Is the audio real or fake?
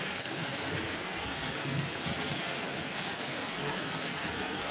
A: fake